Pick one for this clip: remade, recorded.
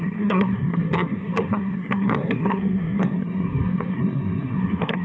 remade